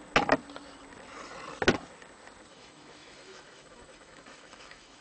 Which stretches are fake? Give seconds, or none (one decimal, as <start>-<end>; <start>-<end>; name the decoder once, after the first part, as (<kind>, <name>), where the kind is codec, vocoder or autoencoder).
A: 2.5-5.0 (autoencoder, DAC-VAE)